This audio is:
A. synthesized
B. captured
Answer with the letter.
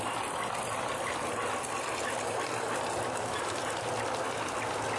B